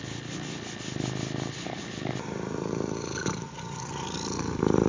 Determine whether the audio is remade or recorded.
recorded